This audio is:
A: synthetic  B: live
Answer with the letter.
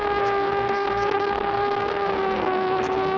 A